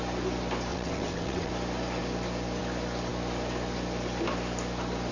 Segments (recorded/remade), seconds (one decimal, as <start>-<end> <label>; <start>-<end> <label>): 0.0-0.7 recorded; 0.7-1.5 remade; 1.5-5.1 recorded